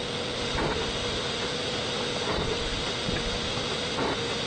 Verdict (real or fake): real